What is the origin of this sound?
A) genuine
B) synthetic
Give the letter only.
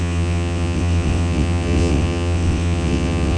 B